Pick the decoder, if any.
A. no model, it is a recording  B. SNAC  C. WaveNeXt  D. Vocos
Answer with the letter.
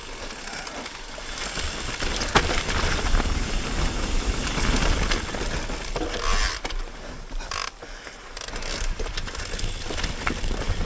A